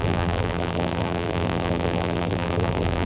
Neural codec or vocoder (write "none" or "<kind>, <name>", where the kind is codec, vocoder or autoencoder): vocoder, BigVGAN v2